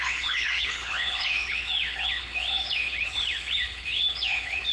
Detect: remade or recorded remade